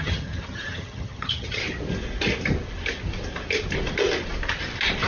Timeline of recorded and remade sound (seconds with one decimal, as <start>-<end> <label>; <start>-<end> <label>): 0.0-1.6 remade; 1.6-5.1 recorded